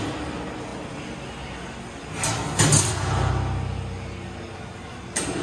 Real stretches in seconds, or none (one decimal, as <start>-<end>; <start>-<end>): 0.0-5.4

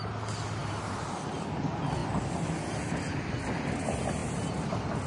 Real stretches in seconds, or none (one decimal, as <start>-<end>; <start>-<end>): 0.0-5.1

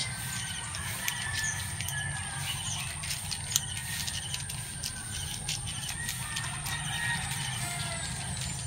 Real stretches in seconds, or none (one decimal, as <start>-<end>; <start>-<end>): 0.0-8.7

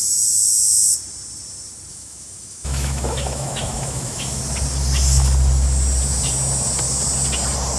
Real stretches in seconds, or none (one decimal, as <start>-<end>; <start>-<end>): 0.0-1.9; 4.4-7.8

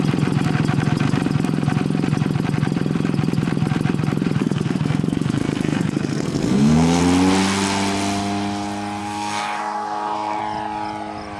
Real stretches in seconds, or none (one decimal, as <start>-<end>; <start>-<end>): 0.0-4.4; 7.0-9.0; 10.4-11.4